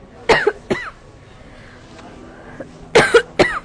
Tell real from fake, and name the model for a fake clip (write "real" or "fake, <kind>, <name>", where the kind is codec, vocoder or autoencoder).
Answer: real